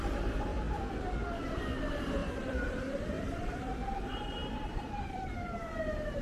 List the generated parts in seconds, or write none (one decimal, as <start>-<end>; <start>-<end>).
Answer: 0.5-1.0; 2.2-5.3

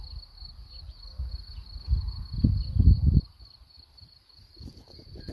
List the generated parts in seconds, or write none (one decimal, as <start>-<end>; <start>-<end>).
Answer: 1.6-2.2; 2.8-5.3